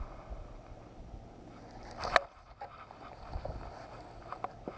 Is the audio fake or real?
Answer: real